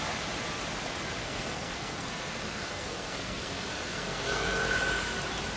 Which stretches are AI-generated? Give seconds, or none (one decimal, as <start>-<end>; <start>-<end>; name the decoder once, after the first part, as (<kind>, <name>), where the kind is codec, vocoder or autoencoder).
1.2-4.6 (codec, SNAC)